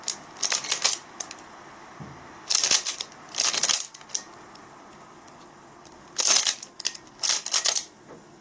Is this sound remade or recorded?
recorded